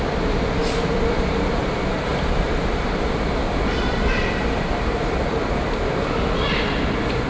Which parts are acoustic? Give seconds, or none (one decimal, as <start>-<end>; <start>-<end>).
0.0-0.6; 1.6-2.1; 6.5-7.3